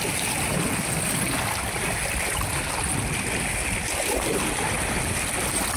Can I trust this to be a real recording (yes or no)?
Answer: yes